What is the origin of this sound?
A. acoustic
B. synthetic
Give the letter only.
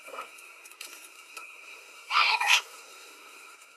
B